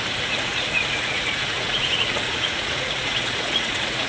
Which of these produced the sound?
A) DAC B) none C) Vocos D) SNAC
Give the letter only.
C